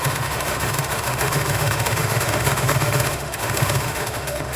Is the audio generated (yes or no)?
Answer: yes